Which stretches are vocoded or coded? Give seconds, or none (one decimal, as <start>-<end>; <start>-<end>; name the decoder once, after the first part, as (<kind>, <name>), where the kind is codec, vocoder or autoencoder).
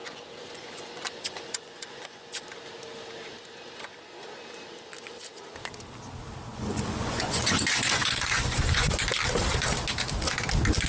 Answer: 0.0-2.4 (vocoder, Vocos); 6.5-8.9